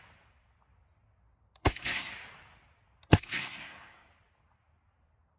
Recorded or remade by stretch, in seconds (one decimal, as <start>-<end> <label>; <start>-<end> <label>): 0.0-1.6 recorded; 1.6-2.1 remade; 2.1-3.1 recorded; 3.1-4.1 remade; 4.1-5.4 recorded